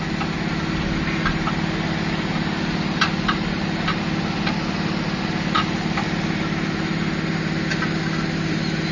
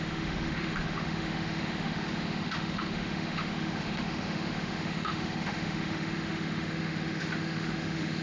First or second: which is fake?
second